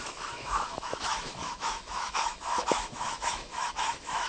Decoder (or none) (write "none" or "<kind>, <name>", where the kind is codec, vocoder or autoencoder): autoencoder, DAC-VAE